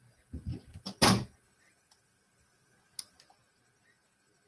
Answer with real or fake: real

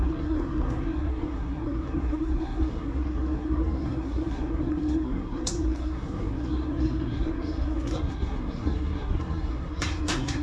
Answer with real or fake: fake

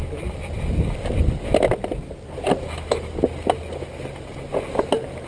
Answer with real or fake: real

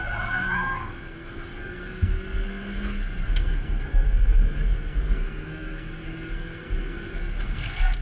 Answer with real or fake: fake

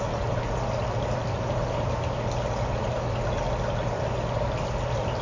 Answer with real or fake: real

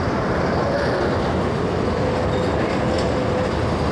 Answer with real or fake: real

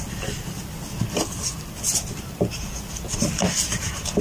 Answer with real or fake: real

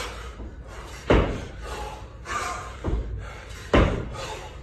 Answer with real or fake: real